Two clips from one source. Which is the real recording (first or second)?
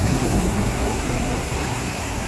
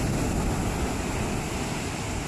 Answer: second